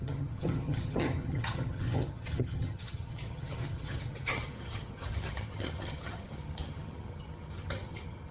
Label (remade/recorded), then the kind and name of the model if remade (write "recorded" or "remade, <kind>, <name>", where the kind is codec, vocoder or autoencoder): remade, vocoder, HiFi-GAN